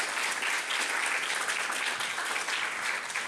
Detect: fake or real real